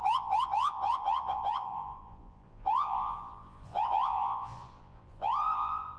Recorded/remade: remade